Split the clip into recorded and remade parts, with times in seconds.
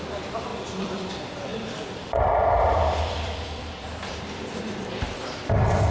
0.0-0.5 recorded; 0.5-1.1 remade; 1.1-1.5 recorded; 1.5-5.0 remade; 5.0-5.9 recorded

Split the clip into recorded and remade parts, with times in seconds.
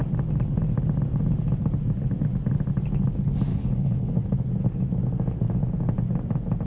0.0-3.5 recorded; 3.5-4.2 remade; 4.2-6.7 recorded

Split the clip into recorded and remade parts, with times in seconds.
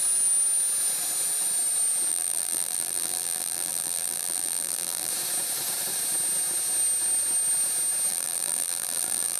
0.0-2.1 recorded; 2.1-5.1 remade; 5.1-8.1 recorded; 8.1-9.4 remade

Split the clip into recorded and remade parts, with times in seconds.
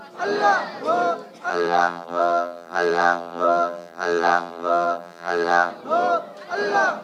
0.0-1.5 recorded; 1.5-5.7 remade; 5.7-7.0 recorded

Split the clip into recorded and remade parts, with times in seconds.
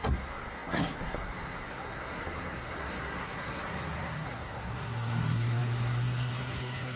0.0-7.0 remade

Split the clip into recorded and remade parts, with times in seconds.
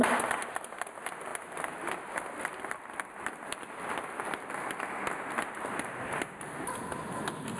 0.0-7.6 recorded